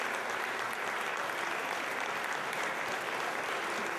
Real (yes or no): yes